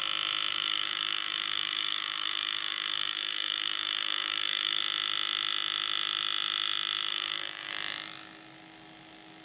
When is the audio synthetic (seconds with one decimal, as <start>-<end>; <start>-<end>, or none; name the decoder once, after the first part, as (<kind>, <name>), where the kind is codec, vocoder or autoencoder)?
0.5-4.8 (codec, DAC); 7.1-7.7